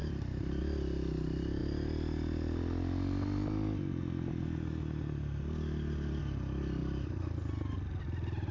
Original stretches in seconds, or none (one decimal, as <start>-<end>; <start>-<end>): 0.6-6.8; 7.3-8.5